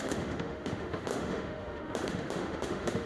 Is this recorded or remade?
remade